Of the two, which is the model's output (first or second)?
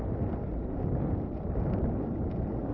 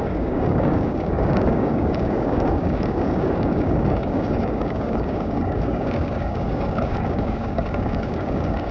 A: second